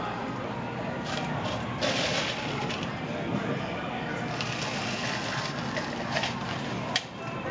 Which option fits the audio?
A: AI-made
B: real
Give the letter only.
A